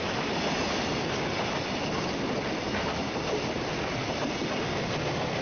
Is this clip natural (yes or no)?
yes